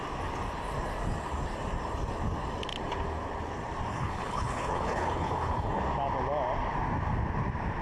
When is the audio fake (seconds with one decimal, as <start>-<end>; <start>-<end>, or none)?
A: 3.9-5.8